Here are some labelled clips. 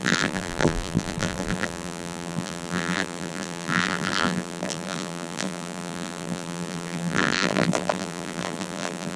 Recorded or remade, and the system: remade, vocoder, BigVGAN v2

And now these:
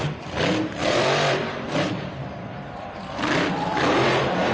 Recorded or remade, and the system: remade, vocoder, BigVGAN v2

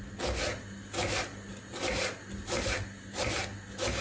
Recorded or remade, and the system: recorded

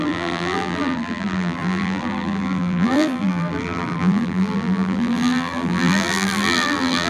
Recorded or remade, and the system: remade, vocoder, BigVGAN v2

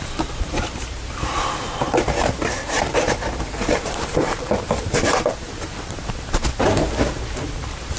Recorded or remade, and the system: remade, vocoder, BigVGAN v2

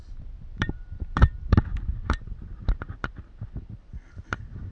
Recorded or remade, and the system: remade, vocoder, BigVGAN v2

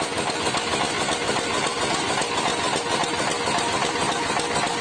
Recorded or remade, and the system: recorded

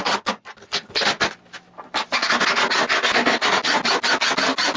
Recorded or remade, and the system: recorded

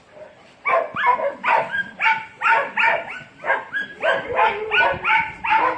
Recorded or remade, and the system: remade, vocoder, BigVGAN v2